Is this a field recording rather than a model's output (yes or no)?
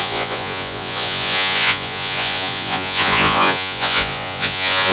no